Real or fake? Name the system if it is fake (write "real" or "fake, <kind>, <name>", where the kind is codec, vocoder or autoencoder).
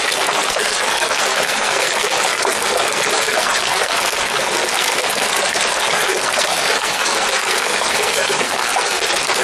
fake, codec, SNAC